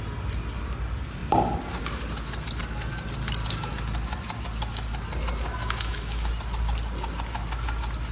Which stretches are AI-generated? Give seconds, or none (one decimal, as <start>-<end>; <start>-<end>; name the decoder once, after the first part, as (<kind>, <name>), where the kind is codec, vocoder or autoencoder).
5.6-6.3 (autoencoder, DAC-VAE)